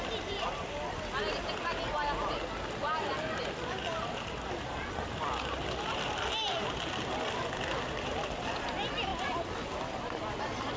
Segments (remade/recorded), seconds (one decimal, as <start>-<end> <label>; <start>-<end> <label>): 0.0-10.8 recorded